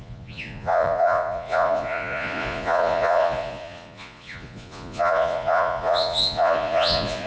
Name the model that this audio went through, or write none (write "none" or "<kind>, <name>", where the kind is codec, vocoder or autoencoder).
vocoder, Vocos